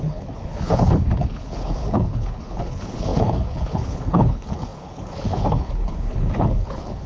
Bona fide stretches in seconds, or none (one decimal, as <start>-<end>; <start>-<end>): none